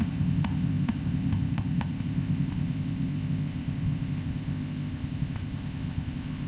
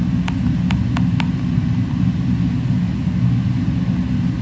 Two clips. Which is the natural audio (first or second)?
second